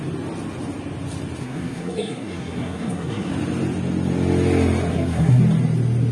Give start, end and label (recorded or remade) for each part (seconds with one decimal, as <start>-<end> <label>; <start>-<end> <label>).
0.0-1.4 recorded; 1.4-3.3 remade; 3.3-4.9 recorded; 4.9-5.4 remade; 5.4-6.1 recorded